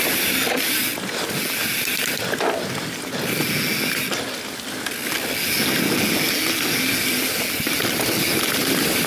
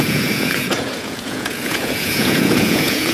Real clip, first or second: first